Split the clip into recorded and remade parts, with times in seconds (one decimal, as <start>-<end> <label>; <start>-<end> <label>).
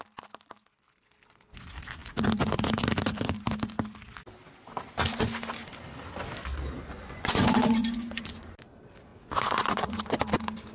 0.0-6.9 recorded; 6.9-8.5 remade; 8.5-9.1 recorded; 9.1-10.0 remade; 10.0-10.7 recorded